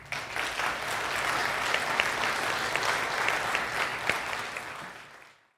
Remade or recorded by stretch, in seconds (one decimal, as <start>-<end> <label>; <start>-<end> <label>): 0.0-5.6 recorded